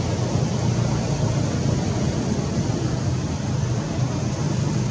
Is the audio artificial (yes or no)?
no